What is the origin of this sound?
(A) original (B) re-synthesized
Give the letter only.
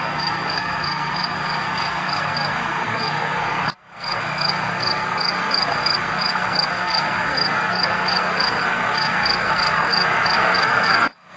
B